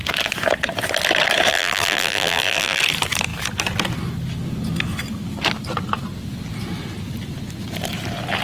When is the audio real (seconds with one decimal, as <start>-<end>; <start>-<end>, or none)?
0.0-1.5; 2.8-8.4